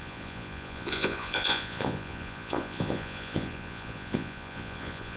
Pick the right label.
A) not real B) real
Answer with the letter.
A